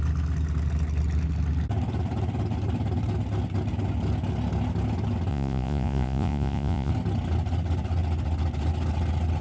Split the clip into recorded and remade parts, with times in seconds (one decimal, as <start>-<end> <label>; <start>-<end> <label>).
0.0-5.3 recorded; 5.3-6.9 remade; 6.9-9.4 recorded